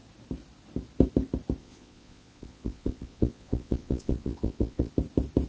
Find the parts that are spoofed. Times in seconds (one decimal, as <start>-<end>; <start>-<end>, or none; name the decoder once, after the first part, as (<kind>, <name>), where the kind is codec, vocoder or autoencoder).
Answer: 1.6-4.9 (vocoder, Vocos)